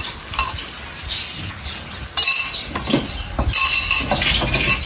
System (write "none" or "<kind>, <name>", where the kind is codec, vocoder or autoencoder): none